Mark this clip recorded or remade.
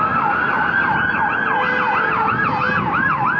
recorded